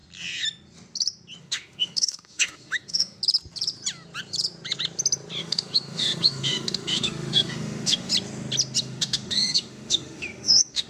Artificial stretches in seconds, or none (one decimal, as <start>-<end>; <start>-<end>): 1.4-3.2; 5.4-8.1; 8.8-10.9